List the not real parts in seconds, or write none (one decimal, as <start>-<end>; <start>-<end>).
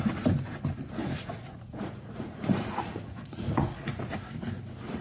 1.0-4.0